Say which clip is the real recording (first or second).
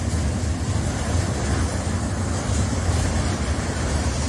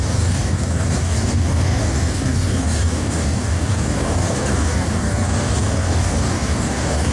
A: first